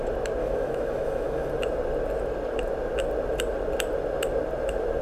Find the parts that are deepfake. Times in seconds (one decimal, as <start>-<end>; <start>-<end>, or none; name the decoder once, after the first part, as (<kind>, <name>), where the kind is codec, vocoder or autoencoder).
0.4-1.5 (autoencoder, DAC-VAE)